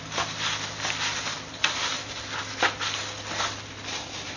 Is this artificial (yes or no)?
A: no